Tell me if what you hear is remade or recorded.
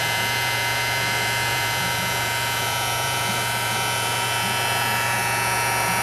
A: remade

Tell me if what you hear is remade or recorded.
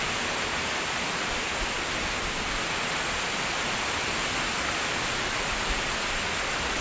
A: recorded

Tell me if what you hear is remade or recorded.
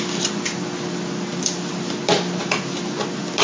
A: recorded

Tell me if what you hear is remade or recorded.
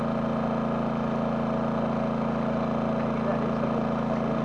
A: recorded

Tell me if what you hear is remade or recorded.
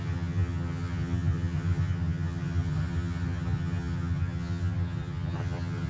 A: remade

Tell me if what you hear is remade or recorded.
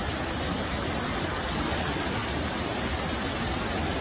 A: recorded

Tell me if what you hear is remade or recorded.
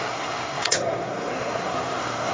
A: remade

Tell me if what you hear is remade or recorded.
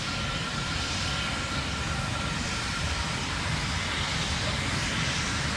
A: recorded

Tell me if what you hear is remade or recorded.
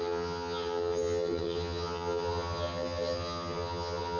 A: remade